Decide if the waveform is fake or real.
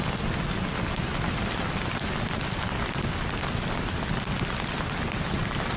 real